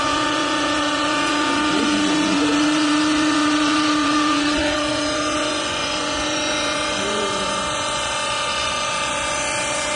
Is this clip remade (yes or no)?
yes